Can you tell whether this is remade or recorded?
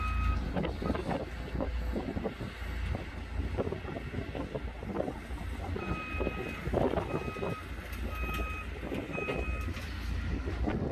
recorded